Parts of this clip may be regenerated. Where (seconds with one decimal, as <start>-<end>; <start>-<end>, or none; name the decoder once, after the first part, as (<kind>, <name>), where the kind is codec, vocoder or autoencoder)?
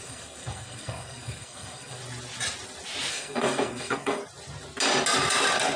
0.0-2.0 (codec, SNAC); 3.1-4.2